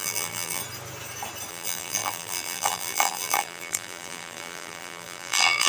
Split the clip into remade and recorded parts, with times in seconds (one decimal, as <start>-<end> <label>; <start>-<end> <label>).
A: 0.0-0.6 remade; 0.6-1.5 recorded; 1.5-5.7 remade